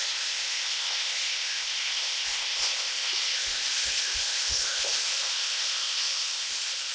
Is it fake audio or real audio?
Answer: fake